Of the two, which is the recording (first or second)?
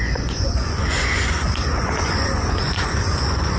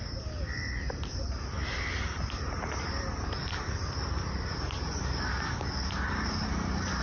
second